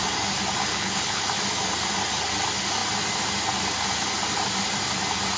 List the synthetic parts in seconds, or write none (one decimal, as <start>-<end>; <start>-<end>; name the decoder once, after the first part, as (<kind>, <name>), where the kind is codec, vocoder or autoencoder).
0.7-1.2 (codec, HILCodec)